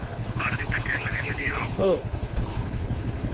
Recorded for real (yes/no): no